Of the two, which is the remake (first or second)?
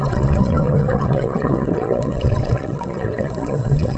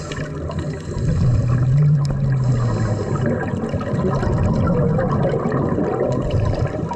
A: first